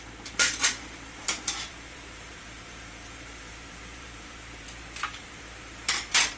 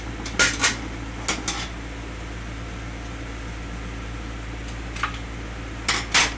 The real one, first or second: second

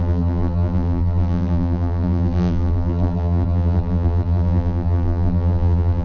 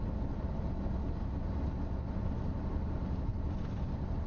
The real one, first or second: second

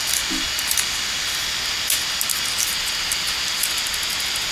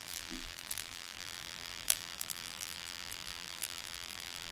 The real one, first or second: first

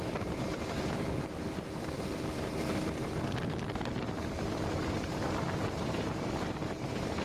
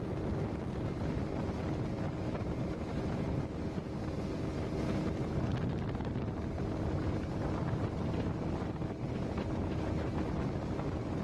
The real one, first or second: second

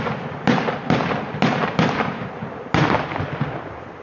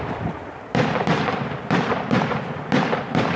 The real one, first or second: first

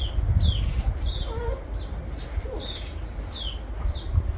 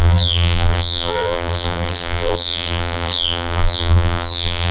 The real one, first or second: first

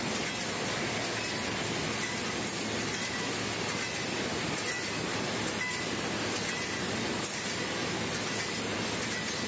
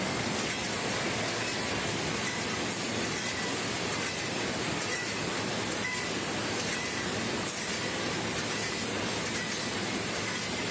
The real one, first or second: first